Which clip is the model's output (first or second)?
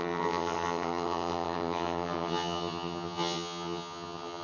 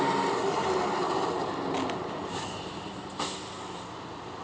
first